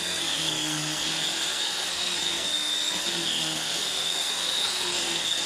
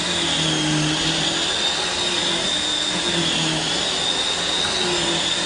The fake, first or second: first